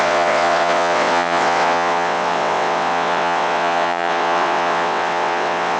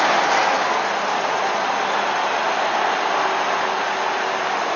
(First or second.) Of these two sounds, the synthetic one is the first